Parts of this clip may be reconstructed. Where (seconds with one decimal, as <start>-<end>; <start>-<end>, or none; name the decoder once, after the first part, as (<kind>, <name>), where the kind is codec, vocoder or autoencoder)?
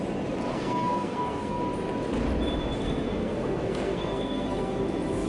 0.5-1.6 (codec, SNAC); 2.8-4.8